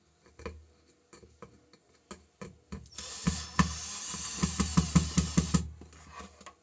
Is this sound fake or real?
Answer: real